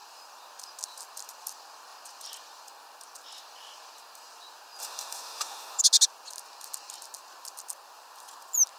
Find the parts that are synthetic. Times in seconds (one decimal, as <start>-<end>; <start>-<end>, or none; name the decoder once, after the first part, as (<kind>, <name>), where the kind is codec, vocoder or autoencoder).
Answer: 4.8-5.8 (autoencoder, DAC-VAE)